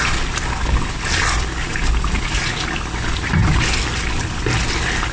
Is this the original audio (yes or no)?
yes